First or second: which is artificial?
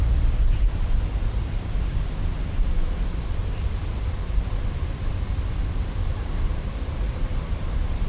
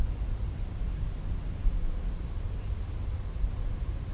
first